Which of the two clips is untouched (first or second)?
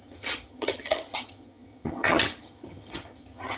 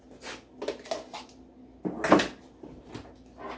second